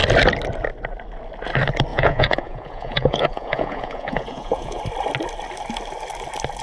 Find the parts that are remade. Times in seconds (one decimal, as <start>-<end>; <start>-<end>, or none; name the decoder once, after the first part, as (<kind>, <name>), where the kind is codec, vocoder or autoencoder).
1.9-4.8 (vocoder, Vocos)